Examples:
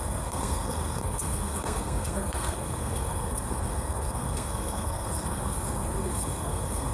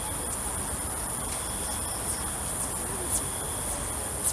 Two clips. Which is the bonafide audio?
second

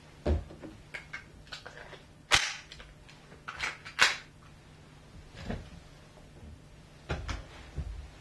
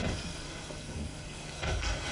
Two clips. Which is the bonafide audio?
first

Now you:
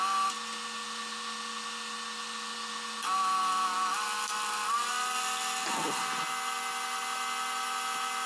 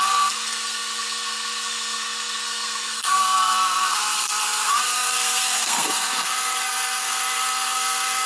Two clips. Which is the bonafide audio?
first